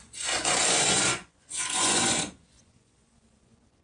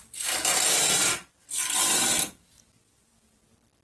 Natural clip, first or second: second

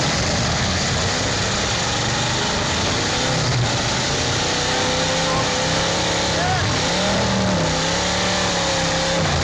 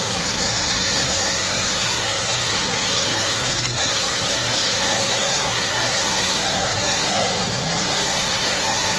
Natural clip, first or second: first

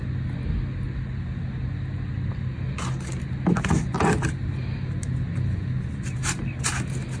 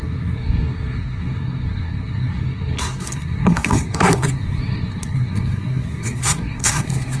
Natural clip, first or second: first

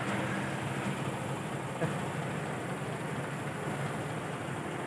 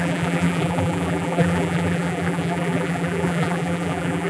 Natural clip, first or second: first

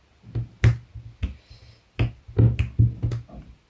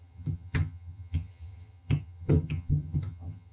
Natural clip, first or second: first